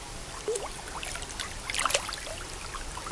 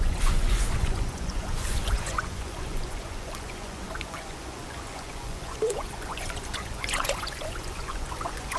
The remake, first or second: second